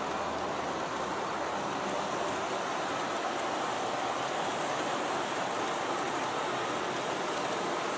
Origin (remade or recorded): recorded